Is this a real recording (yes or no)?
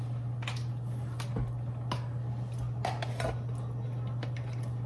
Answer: yes